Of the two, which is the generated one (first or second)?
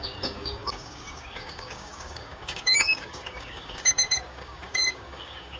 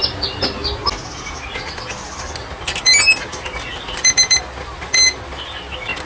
first